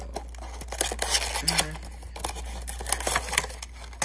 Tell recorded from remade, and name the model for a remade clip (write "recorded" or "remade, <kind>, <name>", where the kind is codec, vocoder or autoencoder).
recorded